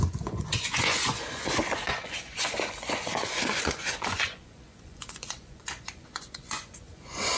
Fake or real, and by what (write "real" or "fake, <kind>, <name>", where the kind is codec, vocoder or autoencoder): fake, vocoder, Vocos